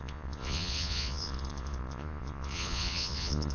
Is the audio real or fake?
fake